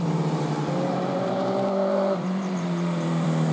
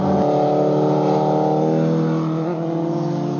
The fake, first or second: first